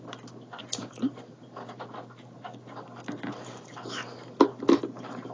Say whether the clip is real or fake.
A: real